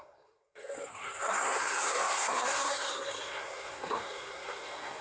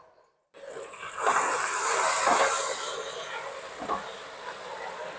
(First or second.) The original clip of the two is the second